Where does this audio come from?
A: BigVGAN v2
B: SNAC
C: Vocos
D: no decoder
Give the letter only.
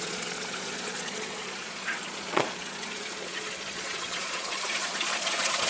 C